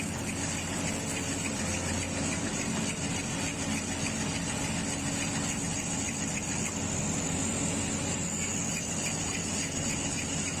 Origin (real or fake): real